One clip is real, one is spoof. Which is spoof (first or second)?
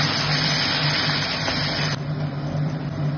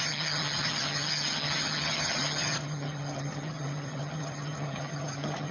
second